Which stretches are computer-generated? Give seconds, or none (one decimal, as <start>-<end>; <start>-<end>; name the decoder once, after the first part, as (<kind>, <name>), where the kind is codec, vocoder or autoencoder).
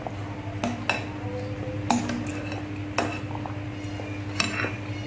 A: none